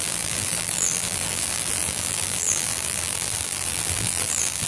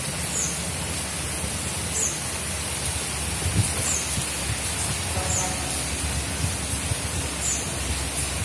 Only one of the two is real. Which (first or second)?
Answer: second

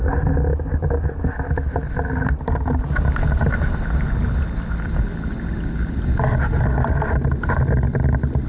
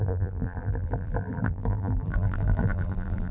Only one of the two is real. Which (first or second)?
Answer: first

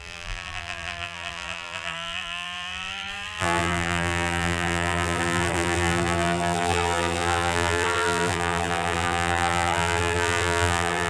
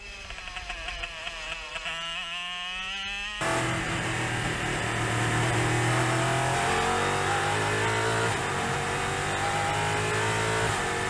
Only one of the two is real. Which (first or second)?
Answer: second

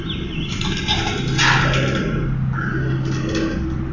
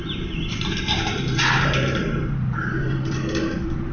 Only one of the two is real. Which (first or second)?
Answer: first